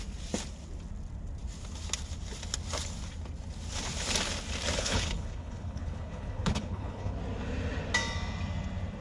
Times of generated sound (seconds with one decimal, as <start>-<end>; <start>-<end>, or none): 4.8-7.2